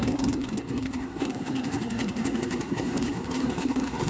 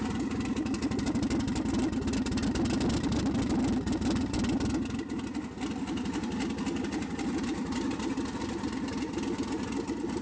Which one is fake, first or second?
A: first